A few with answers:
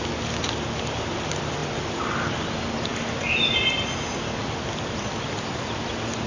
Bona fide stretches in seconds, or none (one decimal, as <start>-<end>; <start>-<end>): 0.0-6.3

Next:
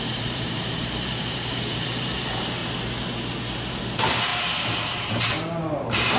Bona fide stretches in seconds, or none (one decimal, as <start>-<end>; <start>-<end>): 2.6-3.7

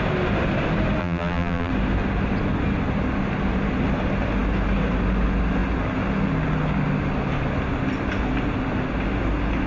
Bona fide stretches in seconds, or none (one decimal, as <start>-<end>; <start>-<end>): 0.0-1.0; 1.7-9.7